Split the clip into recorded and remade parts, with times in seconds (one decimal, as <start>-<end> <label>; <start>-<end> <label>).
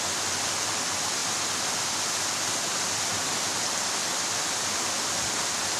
0.0-5.8 recorded